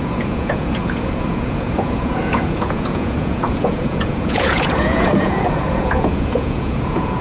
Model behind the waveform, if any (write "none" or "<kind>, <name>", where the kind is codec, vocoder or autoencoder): vocoder, Vocos